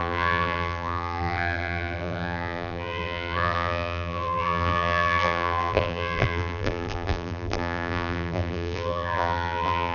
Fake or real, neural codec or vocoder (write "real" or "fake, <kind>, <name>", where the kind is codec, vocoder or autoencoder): fake, vocoder, BigVGAN v2